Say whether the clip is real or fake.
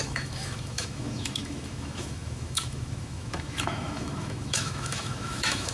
fake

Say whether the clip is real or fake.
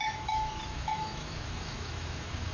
fake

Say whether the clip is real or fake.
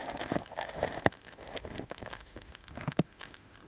fake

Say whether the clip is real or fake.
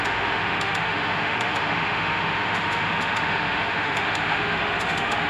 fake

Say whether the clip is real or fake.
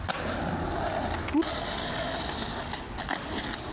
real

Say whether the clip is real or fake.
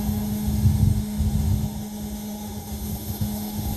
fake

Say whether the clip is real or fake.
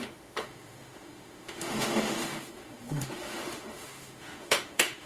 fake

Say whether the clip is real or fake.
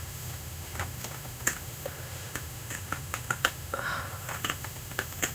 fake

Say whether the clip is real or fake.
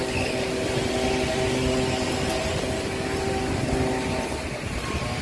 real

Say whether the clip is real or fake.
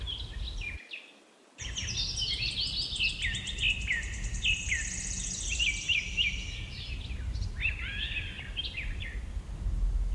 real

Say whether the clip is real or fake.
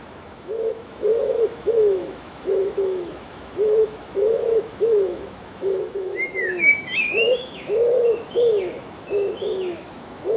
fake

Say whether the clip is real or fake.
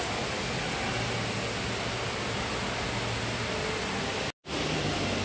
real